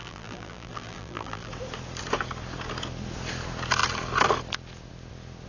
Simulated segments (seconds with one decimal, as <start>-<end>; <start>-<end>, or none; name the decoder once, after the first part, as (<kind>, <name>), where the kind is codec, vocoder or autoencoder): 0.0-1.5 (vocoder, BigVGAN v2)